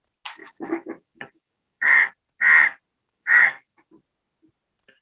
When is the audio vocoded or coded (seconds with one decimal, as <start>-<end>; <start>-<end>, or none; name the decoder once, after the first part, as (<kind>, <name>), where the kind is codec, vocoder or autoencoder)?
0.4-2.1 (codec, DAC); 3.0-3.9